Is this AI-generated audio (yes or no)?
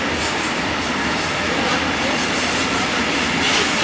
no